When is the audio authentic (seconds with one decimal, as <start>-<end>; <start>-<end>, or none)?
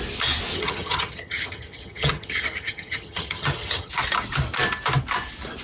0.0-0.5; 3.9-5.6